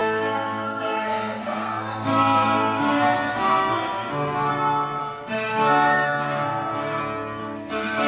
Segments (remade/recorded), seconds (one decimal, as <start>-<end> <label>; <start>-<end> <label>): 0.0-4.5 remade; 4.5-5.0 recorded; 5.0-7.0 remade; 7.0-7.4 recorded; 7.4-8.1 remade